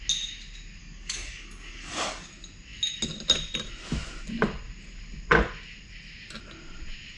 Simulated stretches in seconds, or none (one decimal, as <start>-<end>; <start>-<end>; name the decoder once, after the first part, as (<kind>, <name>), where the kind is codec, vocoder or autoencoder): 0.8-2.3 (codec, DAC)